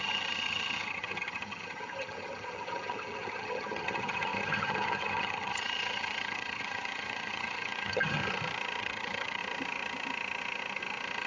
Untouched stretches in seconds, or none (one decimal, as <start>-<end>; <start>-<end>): 8.2-8.8; 9.4-11.3